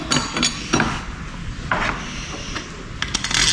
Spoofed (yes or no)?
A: no